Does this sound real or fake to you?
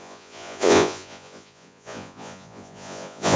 fake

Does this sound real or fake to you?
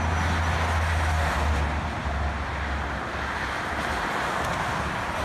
real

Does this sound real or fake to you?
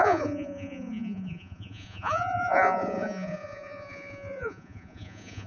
fake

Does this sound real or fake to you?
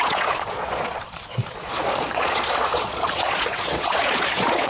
fake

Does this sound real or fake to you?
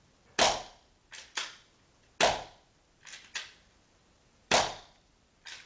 real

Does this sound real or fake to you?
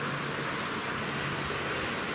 real